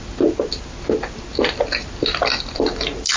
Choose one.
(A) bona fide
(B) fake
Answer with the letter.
A